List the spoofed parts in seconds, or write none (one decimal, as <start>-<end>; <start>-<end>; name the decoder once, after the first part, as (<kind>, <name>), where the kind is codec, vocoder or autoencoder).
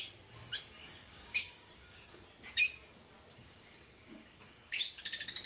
0.8-2.2 (codec, DAC); 3.3-4.8